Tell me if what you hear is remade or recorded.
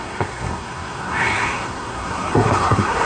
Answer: remade